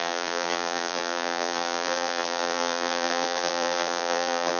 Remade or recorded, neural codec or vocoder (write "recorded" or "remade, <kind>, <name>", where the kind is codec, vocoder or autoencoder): remade, vocoder, BigVGAN v2